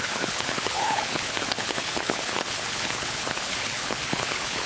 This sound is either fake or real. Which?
fake